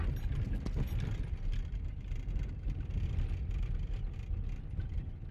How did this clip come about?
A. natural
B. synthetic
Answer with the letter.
A